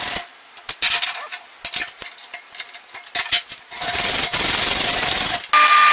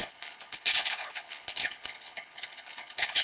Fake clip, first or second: second